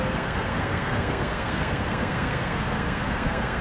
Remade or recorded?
remade